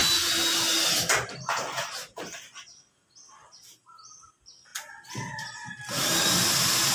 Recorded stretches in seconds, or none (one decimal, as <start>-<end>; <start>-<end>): 0.0-6.9

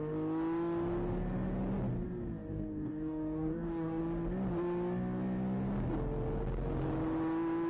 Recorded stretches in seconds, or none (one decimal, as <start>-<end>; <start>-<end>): 0.0-2.5; 4.0-7.7

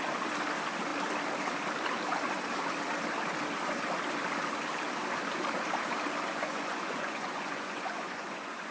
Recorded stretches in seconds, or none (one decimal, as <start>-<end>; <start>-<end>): 0.0-6.3